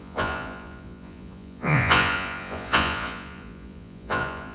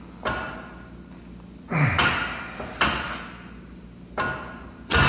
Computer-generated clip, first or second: first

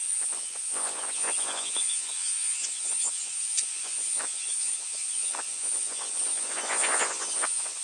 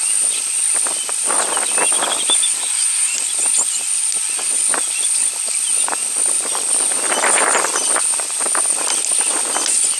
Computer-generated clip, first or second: first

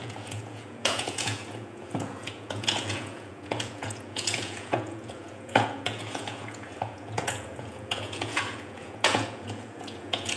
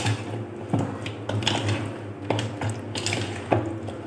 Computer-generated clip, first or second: first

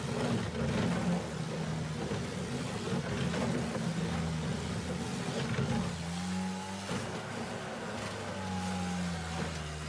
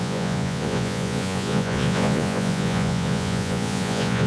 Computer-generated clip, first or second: second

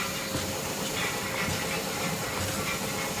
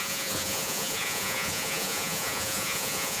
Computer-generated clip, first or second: second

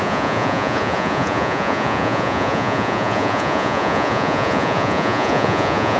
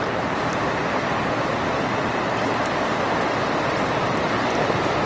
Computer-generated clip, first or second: first